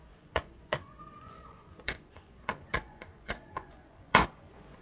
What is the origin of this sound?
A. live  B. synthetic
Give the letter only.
B